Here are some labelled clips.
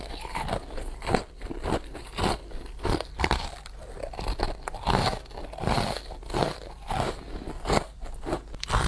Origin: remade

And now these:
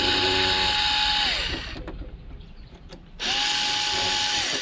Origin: recorded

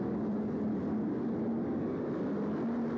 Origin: recorded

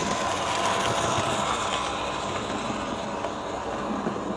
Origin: recorded